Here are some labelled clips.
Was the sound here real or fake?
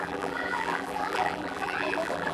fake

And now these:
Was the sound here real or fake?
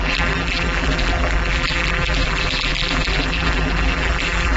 fake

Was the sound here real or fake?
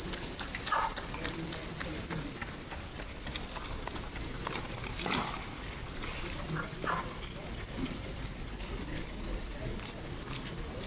fake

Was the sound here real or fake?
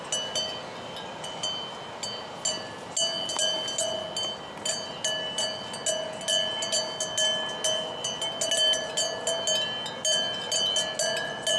real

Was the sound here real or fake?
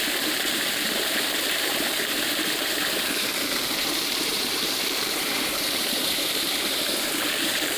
fake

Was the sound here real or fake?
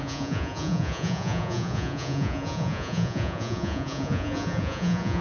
fake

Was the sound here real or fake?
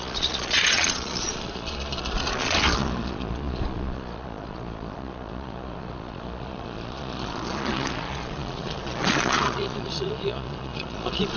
fake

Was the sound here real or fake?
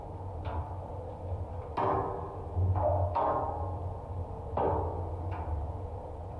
real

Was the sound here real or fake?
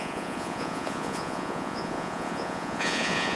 fake